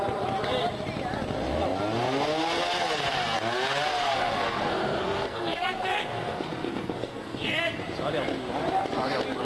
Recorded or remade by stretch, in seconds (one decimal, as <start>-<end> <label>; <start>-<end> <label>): 0.0-3.9 recorded; 3.9-7.8 remade; 7.8-9.4 recorded